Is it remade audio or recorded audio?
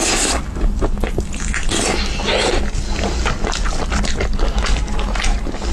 recorded